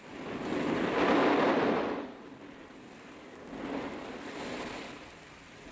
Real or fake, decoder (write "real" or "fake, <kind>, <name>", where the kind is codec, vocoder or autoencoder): real